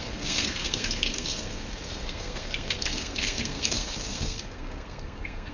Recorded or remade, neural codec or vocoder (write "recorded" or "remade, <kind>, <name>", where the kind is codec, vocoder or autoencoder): remade, codec, SNAC